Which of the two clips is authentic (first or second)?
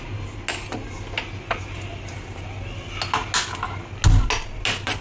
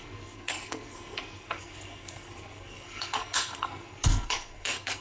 first